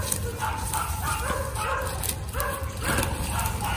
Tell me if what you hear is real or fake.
real